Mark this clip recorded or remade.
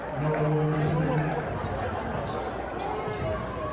recorded